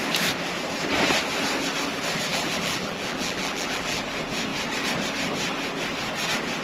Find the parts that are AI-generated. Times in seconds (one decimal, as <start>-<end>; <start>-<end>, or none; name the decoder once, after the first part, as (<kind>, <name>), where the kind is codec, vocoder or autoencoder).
2.3-4.0 (vocoder, BigVGAN v2)